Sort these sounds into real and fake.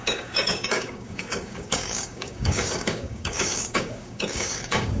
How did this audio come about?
fake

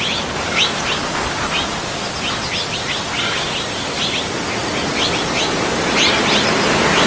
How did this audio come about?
real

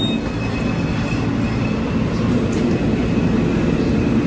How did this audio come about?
real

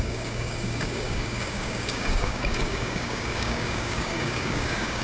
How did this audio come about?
fake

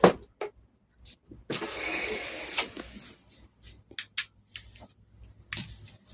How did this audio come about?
real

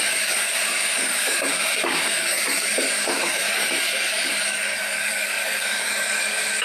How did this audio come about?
fake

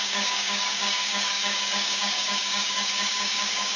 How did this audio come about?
fake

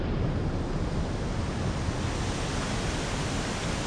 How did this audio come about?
real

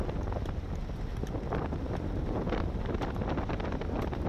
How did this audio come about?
real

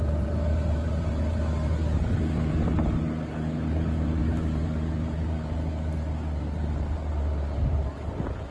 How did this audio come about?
real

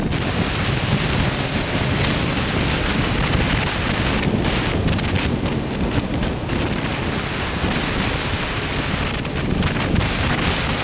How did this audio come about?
real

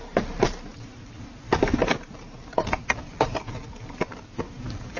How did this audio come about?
real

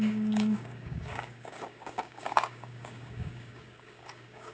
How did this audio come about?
fake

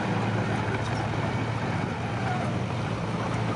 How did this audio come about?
real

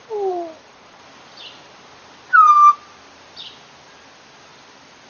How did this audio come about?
real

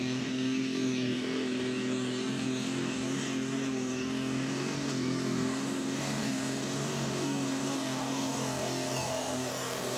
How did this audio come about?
fake